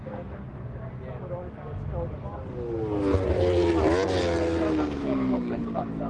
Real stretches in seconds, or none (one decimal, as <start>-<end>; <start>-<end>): 1.0-4.7

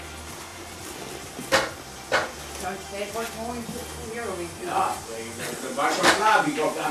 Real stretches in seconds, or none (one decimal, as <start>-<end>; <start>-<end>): 0.0-0.5; 1.0-6.9

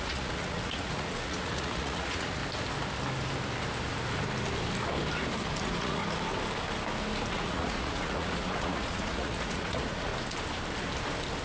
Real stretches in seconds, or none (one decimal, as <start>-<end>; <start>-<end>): 2.4-5.6; 6.0-7.3; 10.1-11.4

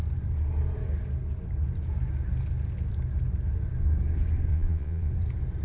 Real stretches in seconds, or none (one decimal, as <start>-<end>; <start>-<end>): 0.0-4.5; 5.1-5.6

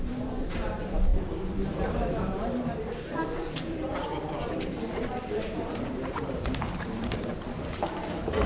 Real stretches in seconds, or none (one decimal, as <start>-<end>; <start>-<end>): 7.3-7.9

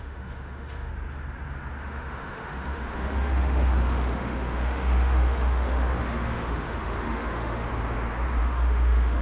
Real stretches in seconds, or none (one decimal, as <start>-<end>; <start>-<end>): 0.9-1.8; 7.7-8.4

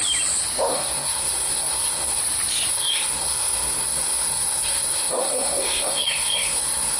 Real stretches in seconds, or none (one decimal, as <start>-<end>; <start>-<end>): 0.0-0.7; 2.2-2.7

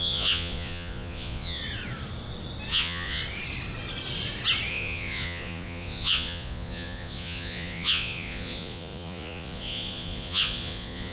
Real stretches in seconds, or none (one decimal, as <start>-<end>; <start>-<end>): 1.6-2.7; 3.2-4.7